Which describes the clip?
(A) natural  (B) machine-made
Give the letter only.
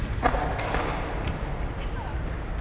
A